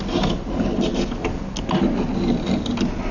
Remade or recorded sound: recorded